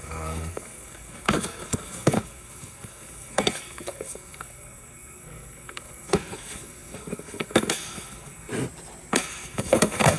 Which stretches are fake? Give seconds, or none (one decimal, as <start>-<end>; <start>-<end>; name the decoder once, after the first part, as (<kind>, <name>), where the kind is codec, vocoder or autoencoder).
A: 0.0-8.5 (codec, SNAC); 9.1-10.2